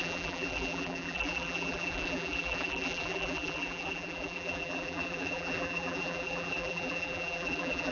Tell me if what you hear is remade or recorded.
remade